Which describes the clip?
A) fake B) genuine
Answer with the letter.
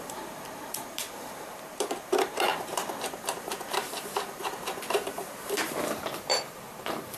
A